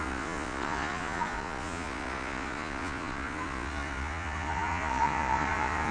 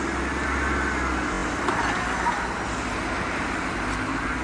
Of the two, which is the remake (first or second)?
first